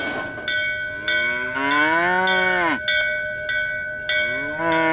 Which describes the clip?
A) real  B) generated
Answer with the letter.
A